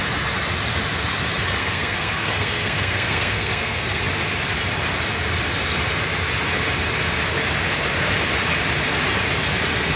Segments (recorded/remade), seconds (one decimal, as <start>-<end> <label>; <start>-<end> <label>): 0.0-1.6 recorded; 1.6-4.0 remade; 4.0-10.0 recorded